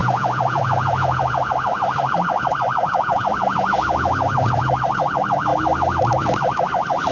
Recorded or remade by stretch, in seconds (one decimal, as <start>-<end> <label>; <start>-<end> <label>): 0.0-1.5 remade; 1.5-2.8 recorded; 2.8-4.7 remade; 4.7-7.1 recorded

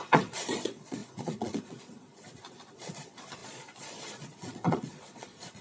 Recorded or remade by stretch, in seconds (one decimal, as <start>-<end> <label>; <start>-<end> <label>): 0.0-5.6 remade